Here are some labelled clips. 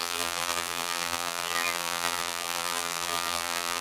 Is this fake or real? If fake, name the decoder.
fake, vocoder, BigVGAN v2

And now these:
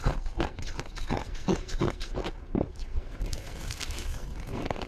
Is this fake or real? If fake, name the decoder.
fake, codec, SNAC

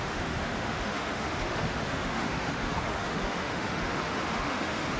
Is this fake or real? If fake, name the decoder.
fake, autoencoder, DAC-VAE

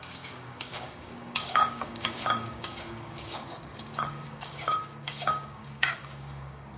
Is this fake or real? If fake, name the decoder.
fake, codec, DAC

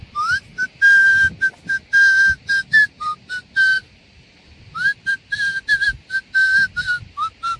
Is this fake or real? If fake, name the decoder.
real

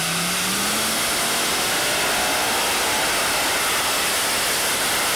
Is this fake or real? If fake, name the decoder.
real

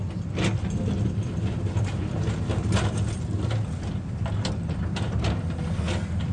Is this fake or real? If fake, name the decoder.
real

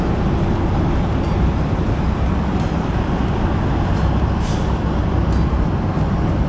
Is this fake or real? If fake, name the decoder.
real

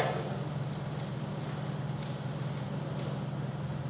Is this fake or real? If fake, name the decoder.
real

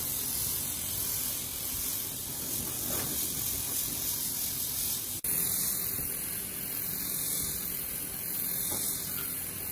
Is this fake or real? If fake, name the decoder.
real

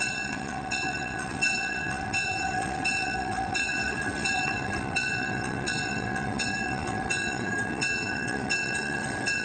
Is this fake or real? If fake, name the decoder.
fake, vocoder, WaveNeXt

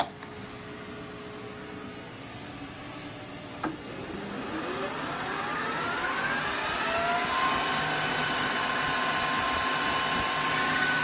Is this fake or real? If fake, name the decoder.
real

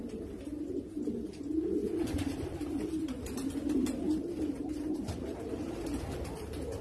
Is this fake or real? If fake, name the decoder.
fake, vocoder, BigVGAN v2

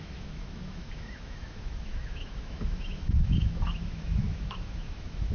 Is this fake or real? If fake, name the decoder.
fake, autoencoder, DAC-VAE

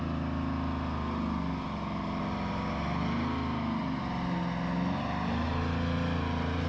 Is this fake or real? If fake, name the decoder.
real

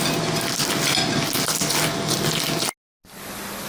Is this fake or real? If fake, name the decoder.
real